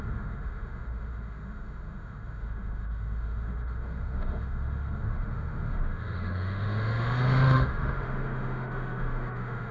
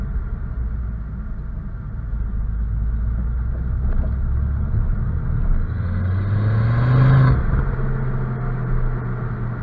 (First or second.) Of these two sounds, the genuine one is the second